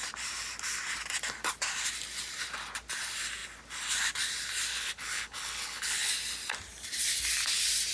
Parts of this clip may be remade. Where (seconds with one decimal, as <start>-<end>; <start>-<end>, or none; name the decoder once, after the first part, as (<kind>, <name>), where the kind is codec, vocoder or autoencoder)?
4.7-6.1 (codec, HILCodec)

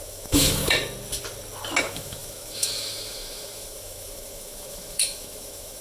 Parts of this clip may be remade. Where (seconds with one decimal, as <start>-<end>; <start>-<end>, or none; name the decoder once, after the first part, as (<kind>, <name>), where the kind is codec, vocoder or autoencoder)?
0.0-0.6 (autoencoder, DAC-VAE); 1.8-5.8